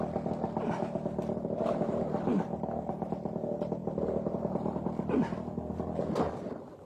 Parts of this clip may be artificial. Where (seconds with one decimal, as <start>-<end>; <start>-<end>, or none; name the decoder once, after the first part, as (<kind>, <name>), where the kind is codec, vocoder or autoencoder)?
none